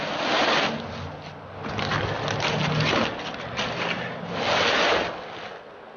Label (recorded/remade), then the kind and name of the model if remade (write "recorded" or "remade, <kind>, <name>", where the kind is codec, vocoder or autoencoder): recorded